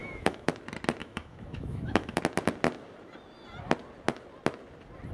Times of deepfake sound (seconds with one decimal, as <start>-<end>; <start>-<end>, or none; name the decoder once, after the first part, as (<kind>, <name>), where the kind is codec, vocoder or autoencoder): 0.0-0.5 (autoencoder, DAC-VAE); 1.0-2.2

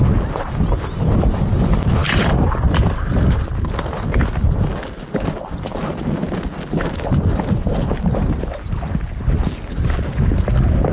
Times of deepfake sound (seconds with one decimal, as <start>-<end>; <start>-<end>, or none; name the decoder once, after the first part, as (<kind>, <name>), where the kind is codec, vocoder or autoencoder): none